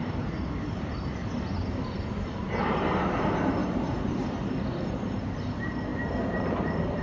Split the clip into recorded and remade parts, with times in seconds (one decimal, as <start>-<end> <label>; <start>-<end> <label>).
0.0-1.2 remade; 1.2-1.9 recorded; 1.9-5.9 remade; 5.9-6.5 recorded; 6.5-7.0 remade